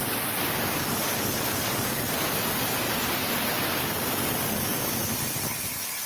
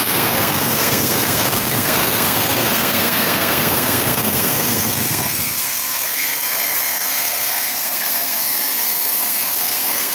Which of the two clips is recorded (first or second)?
first